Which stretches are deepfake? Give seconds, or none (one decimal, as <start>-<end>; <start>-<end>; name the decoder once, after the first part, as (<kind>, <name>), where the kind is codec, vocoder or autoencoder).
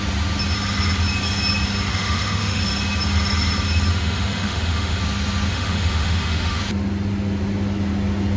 1.9-2.6 (autoencoder, DAC-VAE); 3.9-5.0; 5.5-6.6